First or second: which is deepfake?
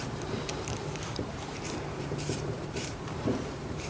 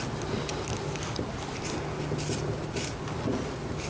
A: first